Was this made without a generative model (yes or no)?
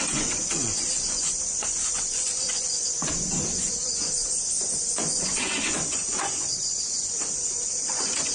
no